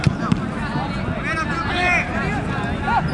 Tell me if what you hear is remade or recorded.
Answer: recorded